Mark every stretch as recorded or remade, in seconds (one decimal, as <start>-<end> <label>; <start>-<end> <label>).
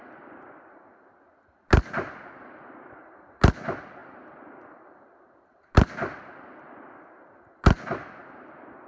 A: 0.0-8.9 recorded